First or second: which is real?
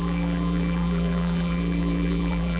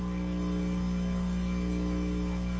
second